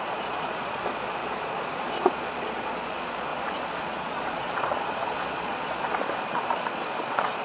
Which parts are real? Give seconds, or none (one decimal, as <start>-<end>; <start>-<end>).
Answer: none